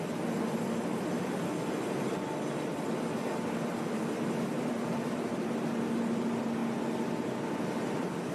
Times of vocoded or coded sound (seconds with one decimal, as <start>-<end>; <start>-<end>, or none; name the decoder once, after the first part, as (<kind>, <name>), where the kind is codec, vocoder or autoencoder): none